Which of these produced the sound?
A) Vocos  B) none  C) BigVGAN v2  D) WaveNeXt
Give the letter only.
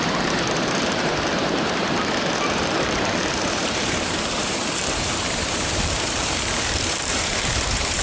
C